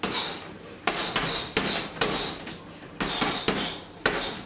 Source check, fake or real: real